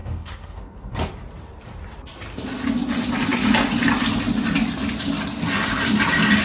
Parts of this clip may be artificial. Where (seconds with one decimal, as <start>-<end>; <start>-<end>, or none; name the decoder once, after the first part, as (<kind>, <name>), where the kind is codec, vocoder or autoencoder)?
0.0-1.1 (codec, SNAC)